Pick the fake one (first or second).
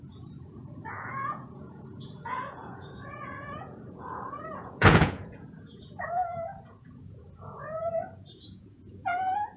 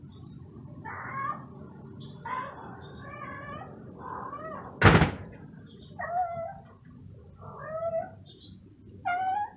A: first